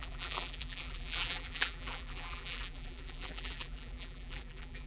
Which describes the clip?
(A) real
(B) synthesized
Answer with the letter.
B